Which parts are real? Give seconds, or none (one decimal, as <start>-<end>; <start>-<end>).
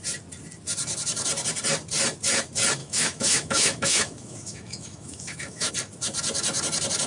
0.0-2.8; 5.7-7.1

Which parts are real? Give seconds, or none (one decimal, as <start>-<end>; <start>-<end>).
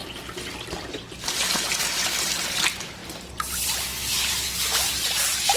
0.0-0.9; 3.0-5.6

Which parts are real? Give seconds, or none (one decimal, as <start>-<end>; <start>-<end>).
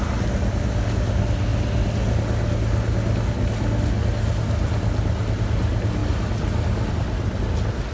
0.0-7.9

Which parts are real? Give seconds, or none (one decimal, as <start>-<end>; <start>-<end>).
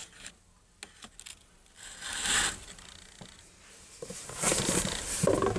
0.0-5.6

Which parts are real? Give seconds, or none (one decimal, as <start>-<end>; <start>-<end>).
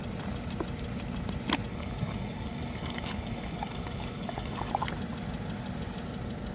0.0-1.7; 4.7-6.5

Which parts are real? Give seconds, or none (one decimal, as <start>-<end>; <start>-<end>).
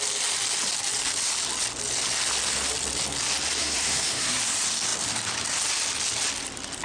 0.0-3.6; 4.4-6.8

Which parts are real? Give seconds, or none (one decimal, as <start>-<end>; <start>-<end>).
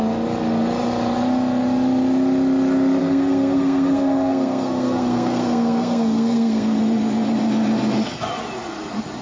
0.0-3.0; 6.8-9.2